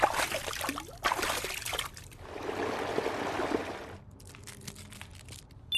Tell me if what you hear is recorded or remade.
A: recorded